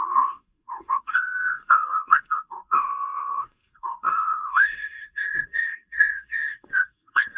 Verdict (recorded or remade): remade